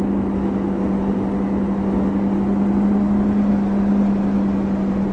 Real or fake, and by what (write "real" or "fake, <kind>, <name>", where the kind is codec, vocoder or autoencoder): real